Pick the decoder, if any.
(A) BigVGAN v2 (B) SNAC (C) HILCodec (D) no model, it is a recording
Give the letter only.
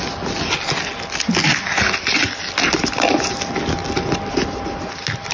D